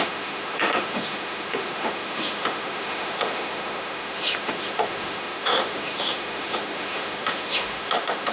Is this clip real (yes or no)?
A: no